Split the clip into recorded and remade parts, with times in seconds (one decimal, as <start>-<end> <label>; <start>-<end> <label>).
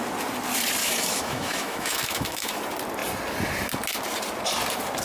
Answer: 0.0-0.8 recorded; 0.8-2.6 remade; 2.6-5.0 recorded